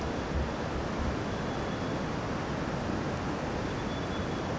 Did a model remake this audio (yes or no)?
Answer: no